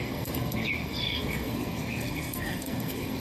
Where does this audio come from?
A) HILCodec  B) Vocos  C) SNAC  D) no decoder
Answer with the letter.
C